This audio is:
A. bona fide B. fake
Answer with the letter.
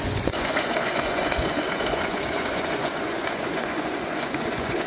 B